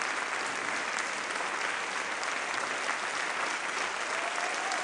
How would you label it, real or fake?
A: real